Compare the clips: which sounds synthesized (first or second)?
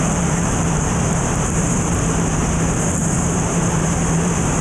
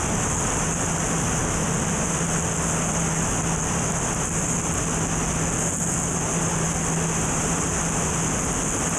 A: first